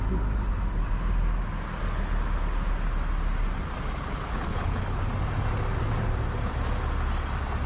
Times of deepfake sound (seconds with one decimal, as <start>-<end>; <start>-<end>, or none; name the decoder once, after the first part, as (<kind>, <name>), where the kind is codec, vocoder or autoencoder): 3.9-5.1 (codec, HILCodec)